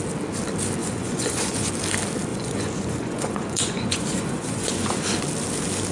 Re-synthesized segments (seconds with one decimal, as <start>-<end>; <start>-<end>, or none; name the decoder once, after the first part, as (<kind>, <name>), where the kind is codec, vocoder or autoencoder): 0.8-1.7 (vocoder, Vocos); 2.3-5.0